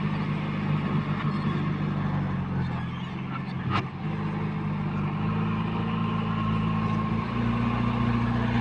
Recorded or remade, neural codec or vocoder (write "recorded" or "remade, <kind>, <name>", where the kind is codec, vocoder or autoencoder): recorded